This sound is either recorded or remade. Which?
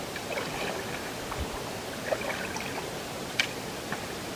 recorded